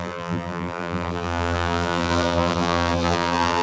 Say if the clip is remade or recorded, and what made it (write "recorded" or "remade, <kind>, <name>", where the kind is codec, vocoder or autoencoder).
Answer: remade, vocoder, BigVGAN v2